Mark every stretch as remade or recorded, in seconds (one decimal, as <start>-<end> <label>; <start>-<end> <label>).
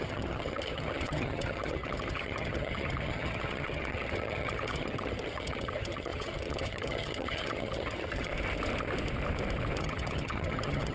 0.0-8.3 remade; 8.3-9.8 recorded; 9.8-10.9 remade